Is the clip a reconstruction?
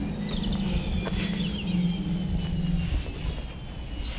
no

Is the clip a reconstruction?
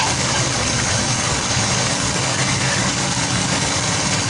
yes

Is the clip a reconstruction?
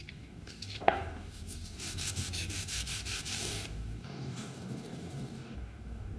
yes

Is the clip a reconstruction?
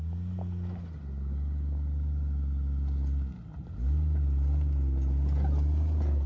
no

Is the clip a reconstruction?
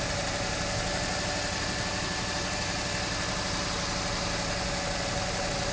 no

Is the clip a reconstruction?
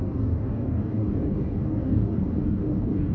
yes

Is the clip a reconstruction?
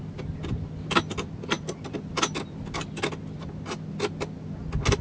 no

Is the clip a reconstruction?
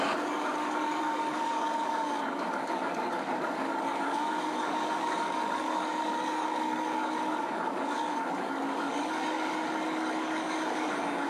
yes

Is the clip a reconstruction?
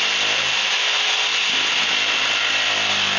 no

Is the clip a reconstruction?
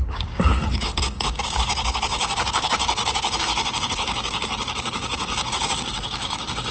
yes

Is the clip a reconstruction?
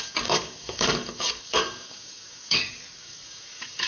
yes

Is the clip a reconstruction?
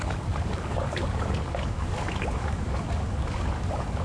yes